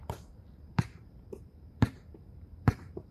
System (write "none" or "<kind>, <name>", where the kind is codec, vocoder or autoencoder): vocoder, BigVGAN v2